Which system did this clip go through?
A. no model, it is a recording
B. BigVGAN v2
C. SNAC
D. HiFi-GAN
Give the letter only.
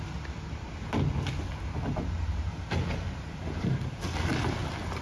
A